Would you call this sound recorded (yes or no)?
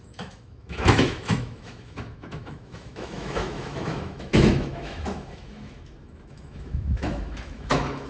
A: no